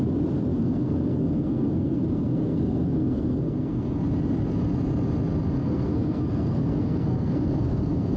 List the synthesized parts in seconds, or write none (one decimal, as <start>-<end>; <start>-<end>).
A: 0.5-4.0; 5.6-8.2